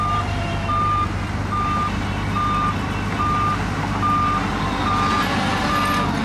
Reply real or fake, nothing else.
real